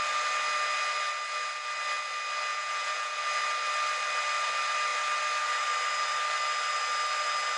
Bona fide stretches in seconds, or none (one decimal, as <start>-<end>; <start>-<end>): 0.0-2.5; 3.1-7.6